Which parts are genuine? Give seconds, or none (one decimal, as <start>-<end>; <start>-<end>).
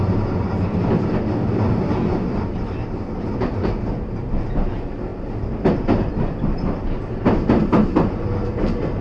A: 0.0-9.0